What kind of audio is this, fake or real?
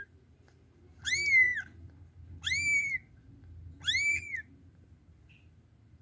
real